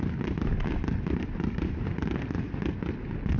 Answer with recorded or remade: recorded